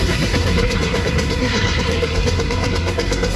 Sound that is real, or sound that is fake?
fake